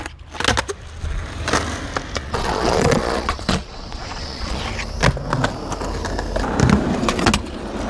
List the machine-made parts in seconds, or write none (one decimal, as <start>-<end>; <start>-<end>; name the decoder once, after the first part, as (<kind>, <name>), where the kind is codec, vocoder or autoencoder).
2.2-4.6 (vocoder, Vocos)

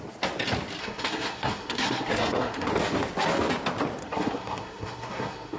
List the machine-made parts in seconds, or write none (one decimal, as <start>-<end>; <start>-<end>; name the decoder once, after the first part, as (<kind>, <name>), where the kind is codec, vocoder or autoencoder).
0.8-2.7 (codec, SNAC); 4.0-5.6